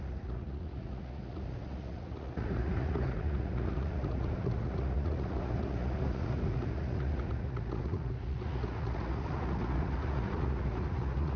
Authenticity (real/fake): fake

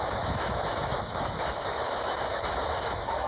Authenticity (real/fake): fake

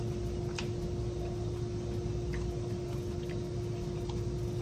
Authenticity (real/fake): real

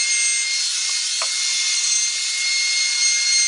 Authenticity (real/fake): real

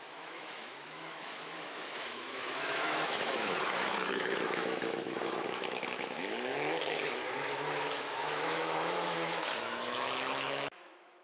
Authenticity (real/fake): fake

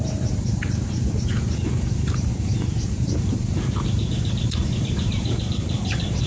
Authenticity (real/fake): fake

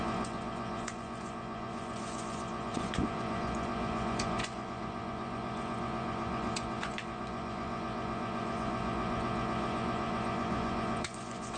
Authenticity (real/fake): fake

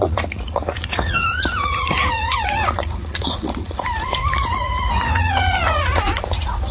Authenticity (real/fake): fake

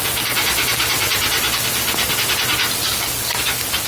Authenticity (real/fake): real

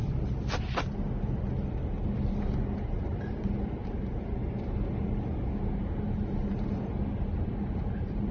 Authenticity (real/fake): real